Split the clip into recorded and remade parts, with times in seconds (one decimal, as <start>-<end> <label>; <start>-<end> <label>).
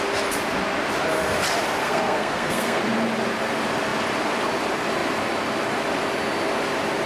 0.0-1.8 recorded; 1.8-2.8 remade; 2.8-7.1 recorded